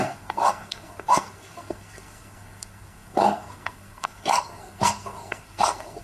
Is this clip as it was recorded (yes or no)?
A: no